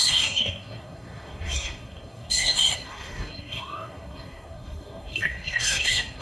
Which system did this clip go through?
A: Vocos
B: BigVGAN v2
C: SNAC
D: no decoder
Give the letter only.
C